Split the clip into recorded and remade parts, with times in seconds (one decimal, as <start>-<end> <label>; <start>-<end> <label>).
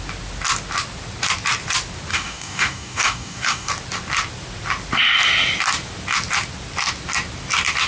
0.0-2.1 recorded; 2.1-3.7 remade; 3.7-7.9 recorded